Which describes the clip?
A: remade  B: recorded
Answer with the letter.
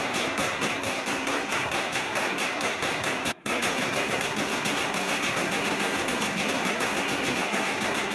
A